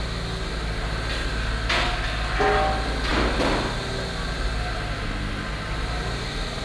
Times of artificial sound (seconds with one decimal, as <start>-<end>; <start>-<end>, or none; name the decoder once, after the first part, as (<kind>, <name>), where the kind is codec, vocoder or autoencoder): none

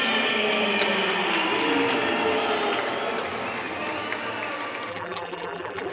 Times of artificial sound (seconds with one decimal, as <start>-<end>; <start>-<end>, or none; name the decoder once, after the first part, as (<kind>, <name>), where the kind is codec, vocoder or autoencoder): 4.9-5.9 (vocoder, BigVGAN v2)

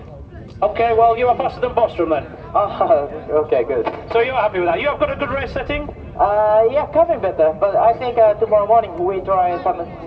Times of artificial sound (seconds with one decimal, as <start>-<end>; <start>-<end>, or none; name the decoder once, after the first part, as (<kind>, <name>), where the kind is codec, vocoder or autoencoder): 0.7-1.3 (autoencoder, DAC-VAE); 2.3-2.9

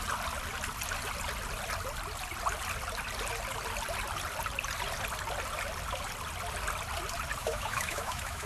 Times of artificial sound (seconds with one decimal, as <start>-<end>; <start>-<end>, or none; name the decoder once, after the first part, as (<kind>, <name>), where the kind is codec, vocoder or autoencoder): 7.4-8.5 (autoencoder, DAC-VAE)